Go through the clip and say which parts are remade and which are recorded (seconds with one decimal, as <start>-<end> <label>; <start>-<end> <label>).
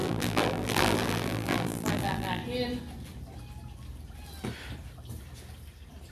0.0-2.4 remade; 2.4-6.1 recorded